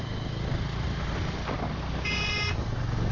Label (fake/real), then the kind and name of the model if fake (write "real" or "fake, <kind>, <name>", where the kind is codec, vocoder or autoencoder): real